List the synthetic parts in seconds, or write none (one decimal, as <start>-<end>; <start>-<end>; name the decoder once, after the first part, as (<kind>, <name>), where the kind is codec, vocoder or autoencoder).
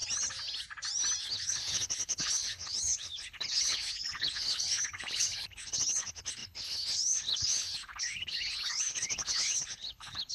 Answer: 1.2-10.3 (codec, HILCodec)